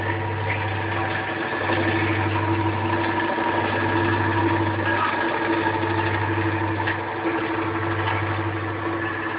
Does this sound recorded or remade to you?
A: recorded